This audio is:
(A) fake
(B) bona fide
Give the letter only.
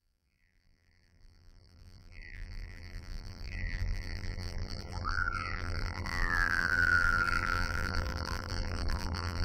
A